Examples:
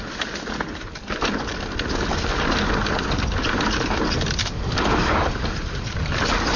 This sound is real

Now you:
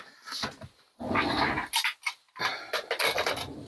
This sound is real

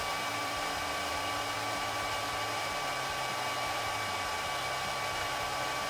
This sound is fake